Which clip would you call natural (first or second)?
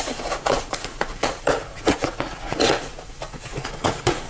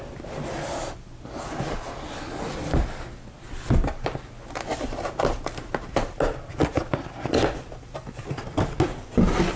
second